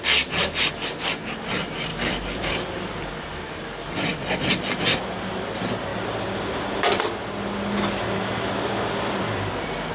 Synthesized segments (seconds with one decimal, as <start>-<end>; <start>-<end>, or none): 0.0-4.1; 5.3-9.9